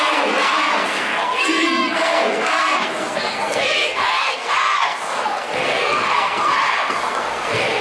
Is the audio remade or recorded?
remade